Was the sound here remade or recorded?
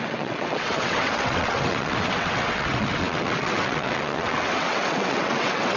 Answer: remade